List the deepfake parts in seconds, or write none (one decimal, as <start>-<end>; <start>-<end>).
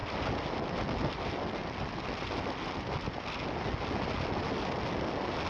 none